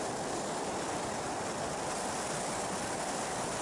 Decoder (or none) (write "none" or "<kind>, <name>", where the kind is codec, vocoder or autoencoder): none